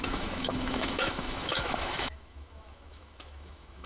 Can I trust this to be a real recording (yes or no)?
no